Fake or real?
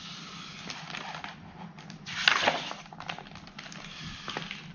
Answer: real